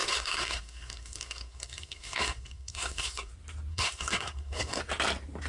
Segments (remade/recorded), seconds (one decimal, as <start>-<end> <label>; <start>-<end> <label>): 0.0-3.3 remade; 3.3-3.7 recorded; 3.7-4.8 remade; 4.8-5.5 recorded